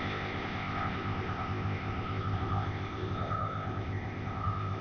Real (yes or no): no